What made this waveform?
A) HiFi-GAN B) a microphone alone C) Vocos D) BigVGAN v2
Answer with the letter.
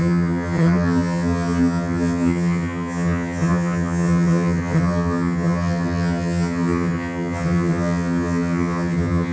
A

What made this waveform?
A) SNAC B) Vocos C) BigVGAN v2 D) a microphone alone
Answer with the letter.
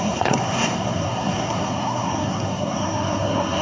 A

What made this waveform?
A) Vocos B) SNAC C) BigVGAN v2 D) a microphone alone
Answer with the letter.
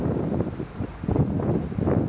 D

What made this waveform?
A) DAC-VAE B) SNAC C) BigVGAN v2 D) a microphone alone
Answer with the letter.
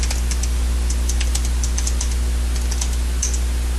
D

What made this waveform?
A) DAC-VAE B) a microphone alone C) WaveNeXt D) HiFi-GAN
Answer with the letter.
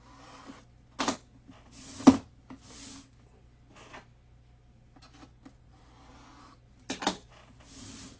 B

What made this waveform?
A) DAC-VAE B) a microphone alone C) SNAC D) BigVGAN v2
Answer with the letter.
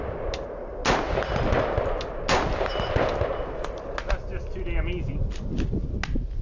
B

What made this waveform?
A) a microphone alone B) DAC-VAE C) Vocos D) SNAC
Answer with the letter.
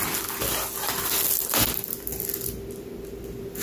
A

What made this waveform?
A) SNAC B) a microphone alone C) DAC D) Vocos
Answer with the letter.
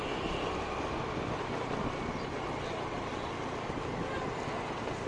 B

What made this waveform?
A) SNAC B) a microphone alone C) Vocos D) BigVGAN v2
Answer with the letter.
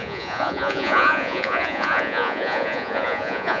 C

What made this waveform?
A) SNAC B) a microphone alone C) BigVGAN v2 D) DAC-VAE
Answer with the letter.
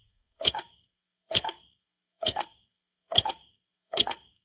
A